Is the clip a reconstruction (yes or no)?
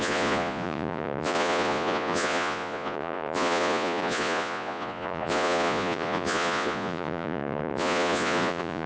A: yes